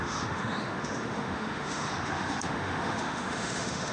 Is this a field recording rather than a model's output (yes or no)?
no